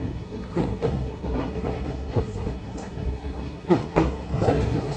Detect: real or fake fake